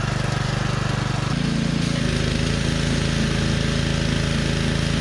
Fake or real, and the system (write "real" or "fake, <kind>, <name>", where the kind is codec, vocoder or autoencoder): real